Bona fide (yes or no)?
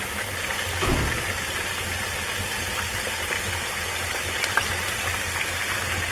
yes